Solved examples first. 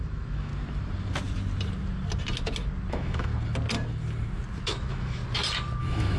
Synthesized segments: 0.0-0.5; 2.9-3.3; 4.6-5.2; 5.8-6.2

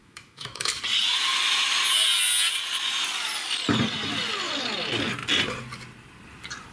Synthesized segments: 0.0-0.7